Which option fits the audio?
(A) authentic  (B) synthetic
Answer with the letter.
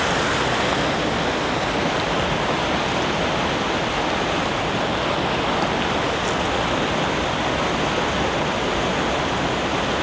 A